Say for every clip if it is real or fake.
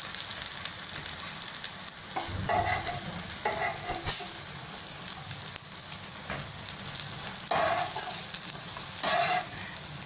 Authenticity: real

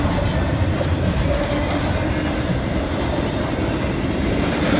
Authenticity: real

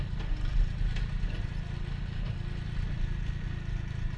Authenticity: real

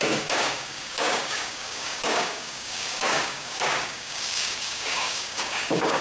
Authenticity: fake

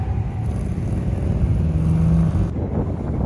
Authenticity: real